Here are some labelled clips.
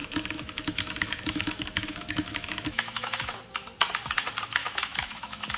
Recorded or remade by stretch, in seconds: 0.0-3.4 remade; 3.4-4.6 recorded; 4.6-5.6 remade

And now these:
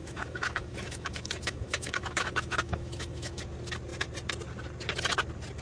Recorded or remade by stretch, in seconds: 0.0-3.4 remade; 3.4-5.6 recorded